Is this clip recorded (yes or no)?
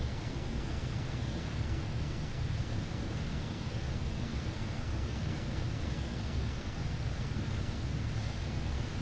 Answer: no